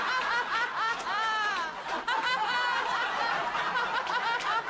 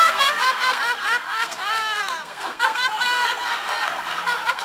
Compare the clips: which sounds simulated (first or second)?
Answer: second